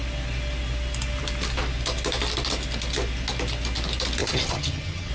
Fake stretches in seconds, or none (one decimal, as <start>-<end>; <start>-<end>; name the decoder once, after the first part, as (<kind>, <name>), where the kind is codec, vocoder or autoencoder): 4.2-5.1 (vocoder, HiFi-GAN)